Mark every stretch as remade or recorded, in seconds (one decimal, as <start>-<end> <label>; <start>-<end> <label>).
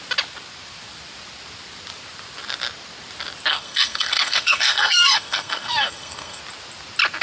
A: 0.0-3.5 recorded; 3.5-6.4 remade; 6.4-7.2 recorded